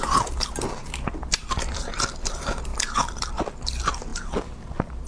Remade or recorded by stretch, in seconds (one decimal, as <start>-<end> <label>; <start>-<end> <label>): 0.0-1.2 recorded; 1.2-1.9 remade; 1.9-2.7 recorded; 2.7-3.3 remade; 3.3-5.1 recorded